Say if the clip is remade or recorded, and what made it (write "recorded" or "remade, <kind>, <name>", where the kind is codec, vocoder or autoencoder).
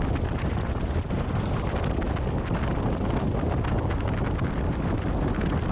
recorded